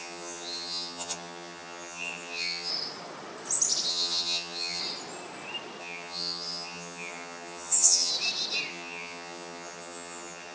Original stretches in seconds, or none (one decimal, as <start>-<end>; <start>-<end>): 2.7-3.9; 4.8-5.8; 8.1-8.7